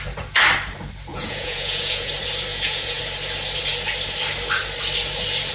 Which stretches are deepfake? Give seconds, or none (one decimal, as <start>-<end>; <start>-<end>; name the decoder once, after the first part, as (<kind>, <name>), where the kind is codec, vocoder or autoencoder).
1.1-2.1 (vocoder, Vocos); 2.5-3.0